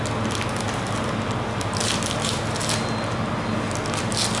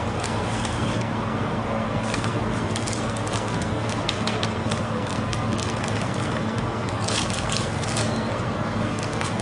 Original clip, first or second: first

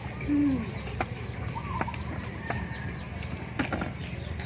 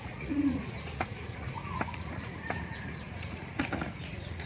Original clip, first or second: first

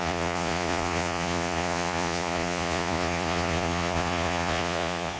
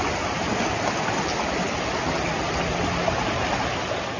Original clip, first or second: second